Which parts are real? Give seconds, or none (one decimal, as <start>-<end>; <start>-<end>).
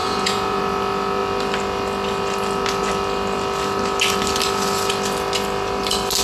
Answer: 0.6-6.2